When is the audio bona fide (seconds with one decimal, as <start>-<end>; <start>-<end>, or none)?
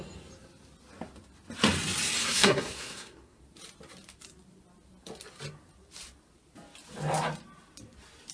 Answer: 0.0-2.2; 3.4-8.3